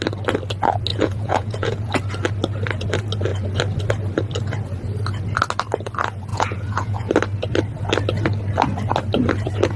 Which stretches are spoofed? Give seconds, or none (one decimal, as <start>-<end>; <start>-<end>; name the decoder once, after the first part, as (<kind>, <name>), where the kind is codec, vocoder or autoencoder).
0.9-1.9 (vocoder, Vocos); 6.3-7.1